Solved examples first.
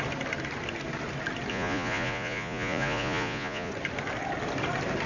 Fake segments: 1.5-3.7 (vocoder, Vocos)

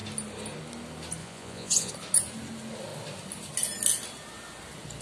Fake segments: 1.2-1.9 (vocoder, Vocos)

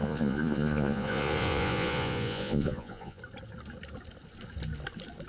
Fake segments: 0.0-3.2 (vocoder, Vocos)

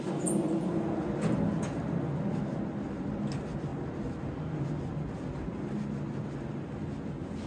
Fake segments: none

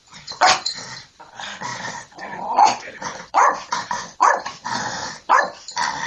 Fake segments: 0.0-0.7 (vocoder, Vocos); 1.7-5.4

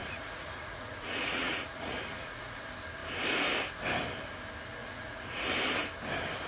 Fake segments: 0.0-2.6 (vocoder, Vocos); 4.8-5.5

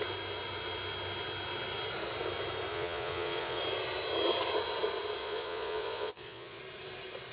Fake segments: 2.7-3.6 (vocoder, Vocos); 5.2-6.6